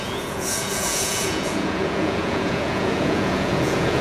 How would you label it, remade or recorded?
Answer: remade